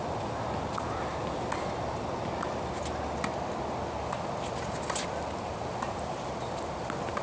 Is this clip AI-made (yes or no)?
no